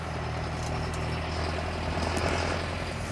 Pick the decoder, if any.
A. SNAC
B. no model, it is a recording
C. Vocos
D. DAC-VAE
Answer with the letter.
B